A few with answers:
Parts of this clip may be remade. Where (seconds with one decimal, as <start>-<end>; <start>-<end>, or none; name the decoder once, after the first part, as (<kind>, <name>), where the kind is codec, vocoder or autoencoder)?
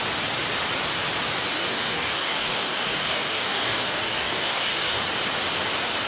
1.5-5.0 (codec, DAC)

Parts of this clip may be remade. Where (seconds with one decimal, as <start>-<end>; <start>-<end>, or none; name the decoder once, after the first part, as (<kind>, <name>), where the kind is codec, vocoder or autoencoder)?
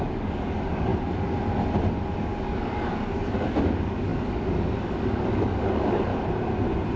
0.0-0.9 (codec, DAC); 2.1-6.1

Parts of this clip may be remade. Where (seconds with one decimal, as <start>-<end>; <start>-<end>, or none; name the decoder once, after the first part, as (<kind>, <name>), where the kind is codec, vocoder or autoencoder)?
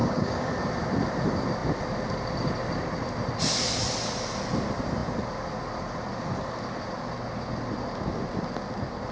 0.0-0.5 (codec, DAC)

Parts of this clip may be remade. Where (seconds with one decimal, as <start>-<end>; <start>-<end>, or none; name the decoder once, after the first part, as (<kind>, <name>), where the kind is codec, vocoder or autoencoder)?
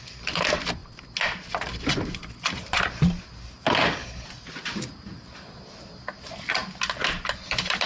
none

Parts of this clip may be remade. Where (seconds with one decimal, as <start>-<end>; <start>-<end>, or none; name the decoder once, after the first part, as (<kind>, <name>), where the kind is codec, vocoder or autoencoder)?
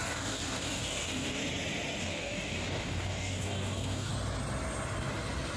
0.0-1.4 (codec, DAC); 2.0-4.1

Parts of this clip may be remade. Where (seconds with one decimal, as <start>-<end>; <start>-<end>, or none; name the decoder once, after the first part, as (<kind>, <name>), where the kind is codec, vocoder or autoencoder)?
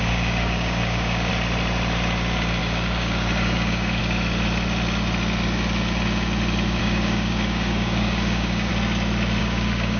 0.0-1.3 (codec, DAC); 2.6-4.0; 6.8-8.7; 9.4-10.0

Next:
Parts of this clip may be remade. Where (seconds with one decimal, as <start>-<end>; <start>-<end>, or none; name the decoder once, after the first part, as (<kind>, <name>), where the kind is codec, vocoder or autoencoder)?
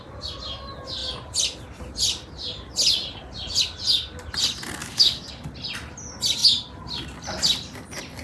4.8-5.5 (codec, DAC)